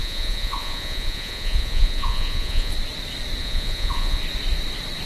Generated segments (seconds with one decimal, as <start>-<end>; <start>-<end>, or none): 0.0-2.7; 3.4-4.2